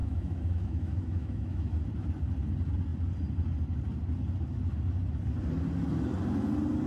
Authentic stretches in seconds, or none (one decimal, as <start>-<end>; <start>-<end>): 1.8-6.9